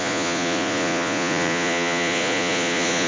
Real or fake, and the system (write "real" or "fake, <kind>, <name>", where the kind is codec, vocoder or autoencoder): fake, vocoder, Vocos